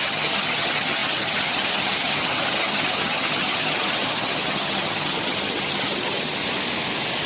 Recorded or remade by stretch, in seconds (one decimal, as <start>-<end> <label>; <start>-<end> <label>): 0.0-6.4 remade; 6.4-7.3 recorded